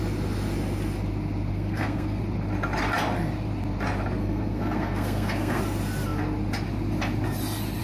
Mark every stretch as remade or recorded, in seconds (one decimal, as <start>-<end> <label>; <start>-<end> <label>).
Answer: 0.0-1.5 recorded; 1.5-2.2 remade; 2.2-4.2 recorded; 4.2-5.6 remade; 5.6-7.8 recorded

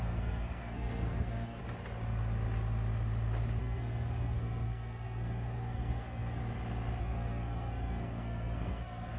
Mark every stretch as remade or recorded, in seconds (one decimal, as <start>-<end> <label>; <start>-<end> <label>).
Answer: 0.0-1.6 remade; 1.6-3.6 recorded; 3.6-6.4 remade; 6.4-7.0 recorded; 7.0-9.2 remade

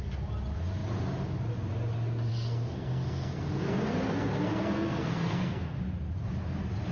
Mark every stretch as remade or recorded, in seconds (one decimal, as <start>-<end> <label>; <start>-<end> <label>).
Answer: 0.0-2.3 recorded; 2.3-5.8 remade; 5.8-6.9 recorded

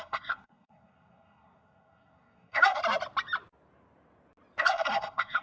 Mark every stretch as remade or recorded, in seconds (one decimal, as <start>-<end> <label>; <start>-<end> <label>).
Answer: 0.0-2.8 remade; 2.8-4.6 recorded; 4.6-5.4 remade

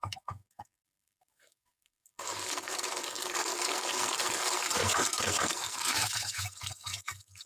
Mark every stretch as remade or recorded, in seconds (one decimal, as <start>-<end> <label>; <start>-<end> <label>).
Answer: 0.0-7.5 remade